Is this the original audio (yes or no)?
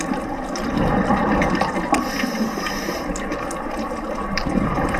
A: yes